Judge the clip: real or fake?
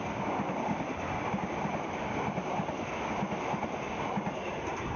real